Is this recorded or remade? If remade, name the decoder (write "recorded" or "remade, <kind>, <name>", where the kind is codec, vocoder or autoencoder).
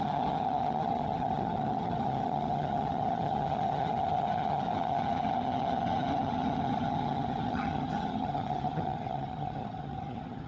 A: remade, vocoder, HiFi-GAN